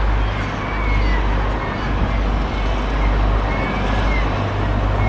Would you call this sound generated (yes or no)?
no